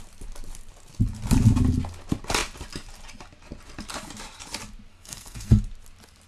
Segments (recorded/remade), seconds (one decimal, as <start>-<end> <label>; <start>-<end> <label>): 0.0-4.9 recorded; 4.9-5.6 remade; 5.6-6.3 recorded